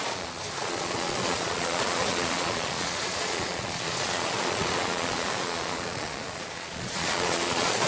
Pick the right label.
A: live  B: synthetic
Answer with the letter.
B